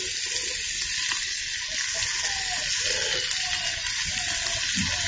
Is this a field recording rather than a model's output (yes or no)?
yes